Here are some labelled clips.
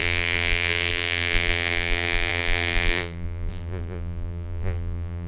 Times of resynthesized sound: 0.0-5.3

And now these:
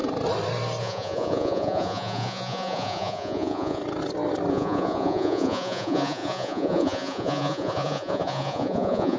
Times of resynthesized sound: 0.8-3.8; 4.5-9.2

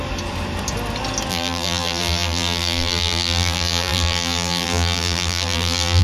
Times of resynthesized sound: 1.3-6.0

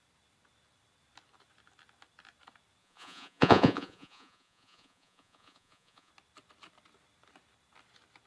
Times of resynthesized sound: 2.8-6.1

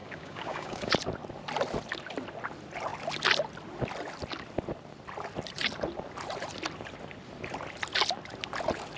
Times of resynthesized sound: 0.0-0.9

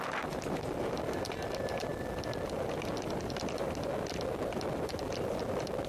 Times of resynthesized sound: none